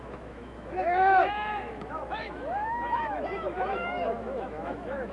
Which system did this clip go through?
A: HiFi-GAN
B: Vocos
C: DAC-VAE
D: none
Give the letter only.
C